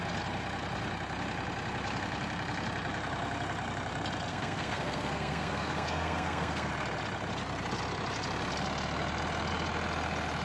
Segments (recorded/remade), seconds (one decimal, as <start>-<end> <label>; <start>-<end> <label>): 0.0-4.3 recorded; 4.3-6.7 remade; 6.7-10.4 recorded